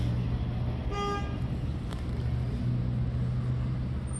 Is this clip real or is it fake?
real